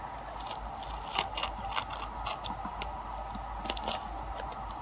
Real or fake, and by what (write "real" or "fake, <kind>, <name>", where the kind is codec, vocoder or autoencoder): real